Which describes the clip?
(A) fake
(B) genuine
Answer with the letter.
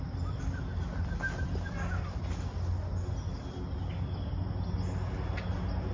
B